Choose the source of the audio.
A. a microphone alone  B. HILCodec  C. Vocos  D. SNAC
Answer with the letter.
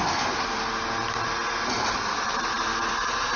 A